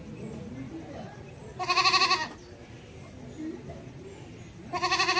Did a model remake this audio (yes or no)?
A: no